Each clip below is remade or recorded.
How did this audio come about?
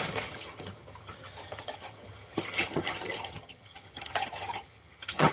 remade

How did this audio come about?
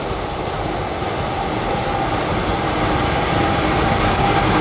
recorded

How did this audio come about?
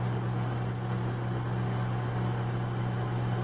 recorded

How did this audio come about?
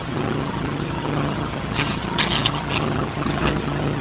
remade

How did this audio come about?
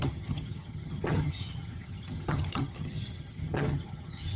remade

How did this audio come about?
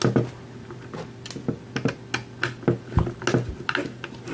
recorded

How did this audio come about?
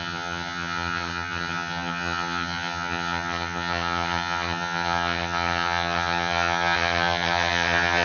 remade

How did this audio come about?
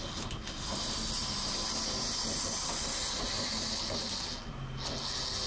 recorded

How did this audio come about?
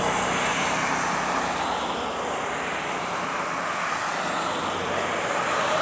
recorded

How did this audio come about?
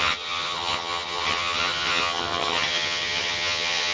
remade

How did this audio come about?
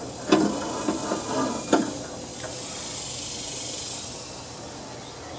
recorded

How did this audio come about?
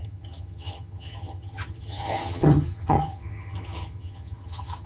remade